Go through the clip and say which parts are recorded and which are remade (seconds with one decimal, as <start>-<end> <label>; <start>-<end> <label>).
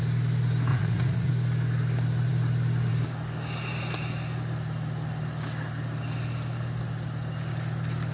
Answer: 0.0-0.7 recorded; 0.7-1.3 remade; 1.3-8.1 recorded